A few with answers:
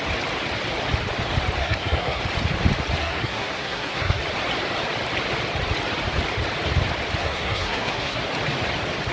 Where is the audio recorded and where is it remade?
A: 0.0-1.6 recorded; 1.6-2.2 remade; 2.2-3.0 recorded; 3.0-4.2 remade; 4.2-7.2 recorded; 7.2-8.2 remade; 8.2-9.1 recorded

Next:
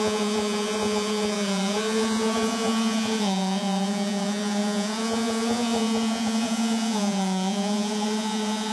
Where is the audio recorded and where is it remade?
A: 0.0-8.7 remade

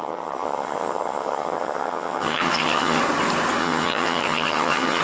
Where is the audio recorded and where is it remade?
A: 0.0-3.0 remade; 3.0-3.6 recorded; 3.6-5.0 remade

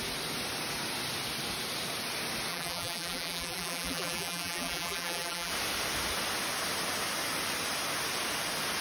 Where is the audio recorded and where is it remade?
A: 0.0-2.5 recorded; 2.5-5.5 remade; 5.5-8.8 recorded

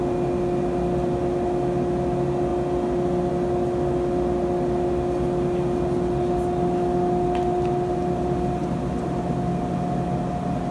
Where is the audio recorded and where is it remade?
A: 0.0-10.7 recorded

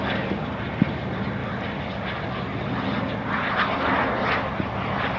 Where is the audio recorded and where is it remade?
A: 0.0-5.2 recorded

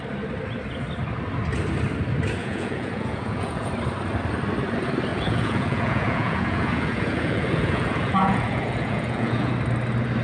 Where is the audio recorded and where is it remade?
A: 0.0-2.4 recorded; 2.4-3.7 remade; 3.7-5.1 recorded; 5.1-9.5 remade; 9.5-10.2 recorded

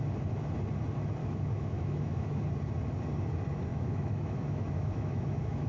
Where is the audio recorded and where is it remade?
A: 0.0-1.2 recorded; 1.2-2.4 remade; 2.4-3.7 recorded; 3.7-5.7 remade